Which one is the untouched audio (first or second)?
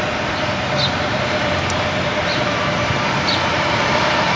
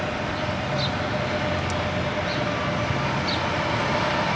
second